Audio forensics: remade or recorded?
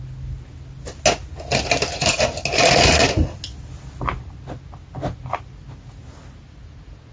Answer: recorded